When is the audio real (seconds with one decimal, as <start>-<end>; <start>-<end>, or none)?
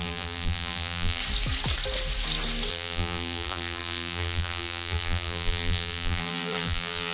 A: 1.2-2.7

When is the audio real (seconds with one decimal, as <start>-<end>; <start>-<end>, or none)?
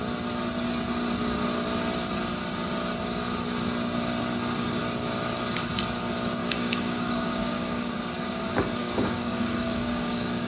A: 0.0-6.4; 7.9-8.8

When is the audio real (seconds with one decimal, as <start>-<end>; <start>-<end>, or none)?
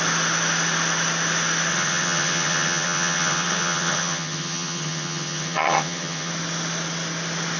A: 0.0-1.7; 6.3-7.6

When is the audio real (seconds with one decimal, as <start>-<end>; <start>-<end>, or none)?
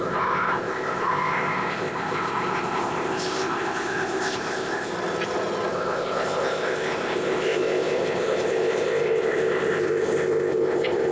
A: 4.9-5.7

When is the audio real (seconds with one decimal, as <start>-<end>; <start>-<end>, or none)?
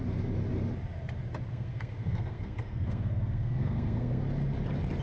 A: 0.0-1.5; 4.2-5.0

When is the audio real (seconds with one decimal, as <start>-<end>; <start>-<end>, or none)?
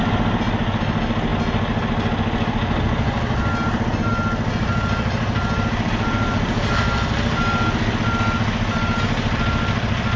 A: 0.0-10.2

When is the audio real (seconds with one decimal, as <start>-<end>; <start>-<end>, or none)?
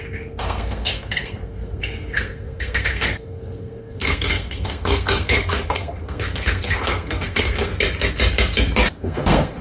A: 7.7-9.0